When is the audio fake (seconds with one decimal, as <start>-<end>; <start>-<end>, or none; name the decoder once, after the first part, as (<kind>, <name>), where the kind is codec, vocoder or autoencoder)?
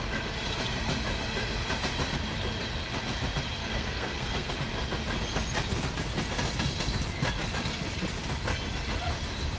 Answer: 3.6-4.5 (codec, SNAC)